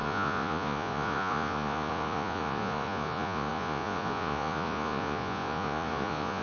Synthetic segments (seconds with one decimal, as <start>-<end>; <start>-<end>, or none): 0.0-6.4